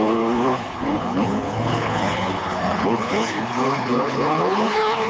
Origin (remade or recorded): remade